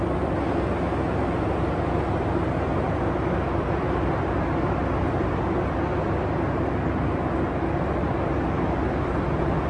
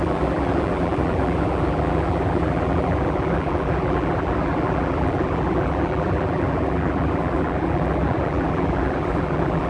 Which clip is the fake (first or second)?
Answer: second